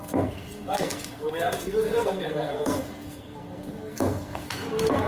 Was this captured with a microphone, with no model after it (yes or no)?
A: no